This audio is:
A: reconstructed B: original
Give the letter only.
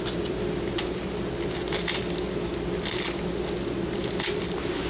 B